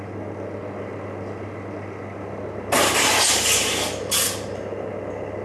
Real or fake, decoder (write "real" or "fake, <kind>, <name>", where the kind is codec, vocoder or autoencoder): real